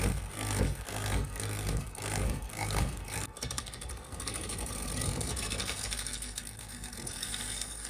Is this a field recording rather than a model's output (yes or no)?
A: no